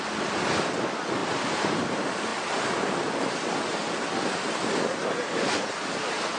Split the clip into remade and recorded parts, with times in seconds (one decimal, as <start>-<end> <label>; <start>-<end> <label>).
0.0-1.2 recorded; 1.2-1.8 remade; 1.8-6.4 recorded